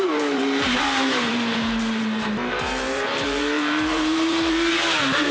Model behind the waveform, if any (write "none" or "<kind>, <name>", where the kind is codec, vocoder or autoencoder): vocoder, BigVGAN v2